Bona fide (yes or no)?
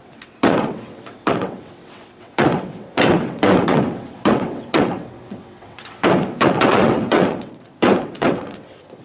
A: no